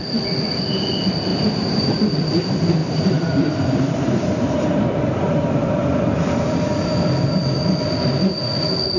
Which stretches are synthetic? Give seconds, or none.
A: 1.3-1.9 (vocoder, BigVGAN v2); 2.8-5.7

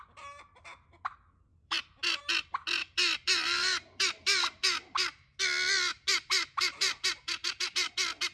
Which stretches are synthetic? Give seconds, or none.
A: 1.5-2.2 (vocoder, BigVGAN v2); 2.8-5.4; 5.9-7.9

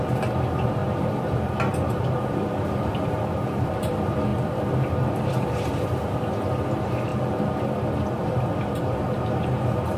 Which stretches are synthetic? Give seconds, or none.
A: 0.0-7.1 (vocoder, BigVGAN v2); 8.2-10.0

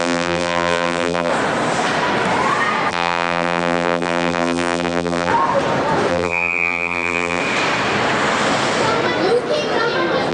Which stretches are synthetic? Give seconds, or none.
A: 0.0-1.3 (vocoder, BigVGAN v2); 2.9-5.3; 6.1-7.4

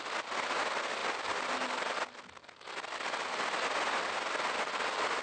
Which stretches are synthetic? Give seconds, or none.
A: 1.0-3.1 (vocoder, BigVGAN v2)

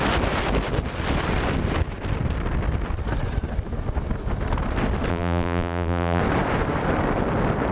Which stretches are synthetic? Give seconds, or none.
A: 5.1-6.2 (vocoder, BigVGAN v2)

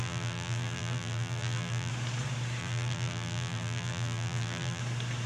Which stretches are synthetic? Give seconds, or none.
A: 0.0-1.9 (vocoder, BigVGAN v2); 2.6-4.8

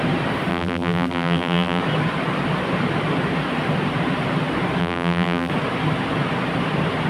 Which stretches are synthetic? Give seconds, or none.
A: 0.5-1.8 (vocoder, BigVGAN v2); 4.8-5.5